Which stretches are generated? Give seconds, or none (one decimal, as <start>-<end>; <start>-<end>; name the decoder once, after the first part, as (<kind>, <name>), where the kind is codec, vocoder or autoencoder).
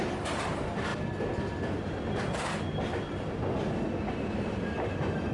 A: 0.0-0.9 (vocoder, BigVGAN v2); 4.1-5.3